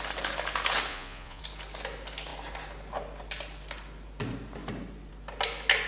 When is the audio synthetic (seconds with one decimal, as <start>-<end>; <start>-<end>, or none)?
0.9-1.4